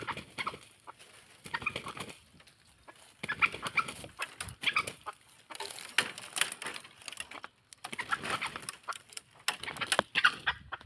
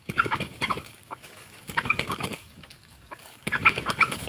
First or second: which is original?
first